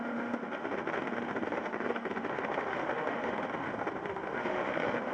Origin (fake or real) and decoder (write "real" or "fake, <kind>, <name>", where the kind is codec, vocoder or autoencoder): fake, autoencoder, DAC-VAE